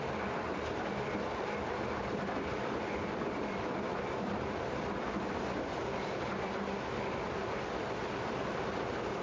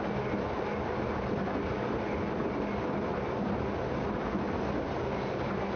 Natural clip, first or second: second